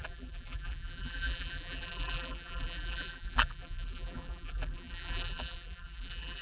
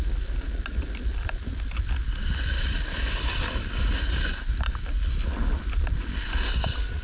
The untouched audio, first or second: second